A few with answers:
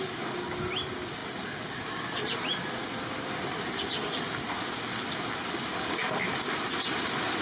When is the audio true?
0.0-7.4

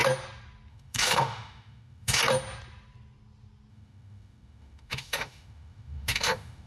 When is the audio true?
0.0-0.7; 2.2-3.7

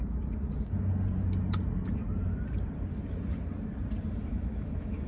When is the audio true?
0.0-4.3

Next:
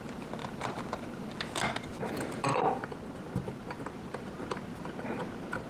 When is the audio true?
0.0-5.7